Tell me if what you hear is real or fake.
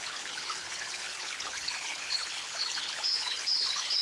fake